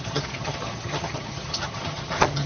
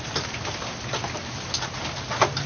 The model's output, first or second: first